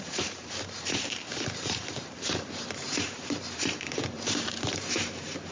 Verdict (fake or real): fake